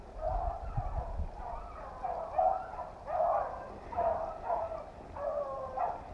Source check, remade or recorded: recorded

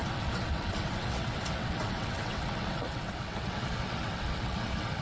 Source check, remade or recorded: remade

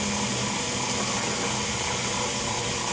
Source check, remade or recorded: recorded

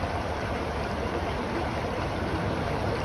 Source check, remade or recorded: remade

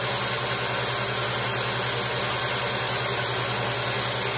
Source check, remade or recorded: recorded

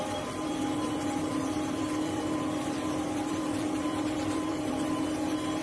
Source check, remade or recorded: remade